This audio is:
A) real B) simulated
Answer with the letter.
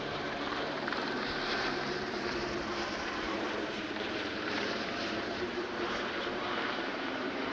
B